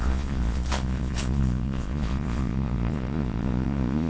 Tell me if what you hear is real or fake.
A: fake